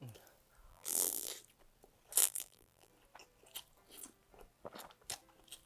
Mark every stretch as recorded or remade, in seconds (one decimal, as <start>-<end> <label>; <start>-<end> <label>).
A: 0.0-0.7 recorded; 0.7-1.3 remade; 1.3-2.2 recorded; 2.2-2.9 remade; 2.9-5.7 recorded